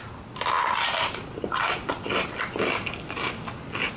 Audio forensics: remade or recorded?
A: recorded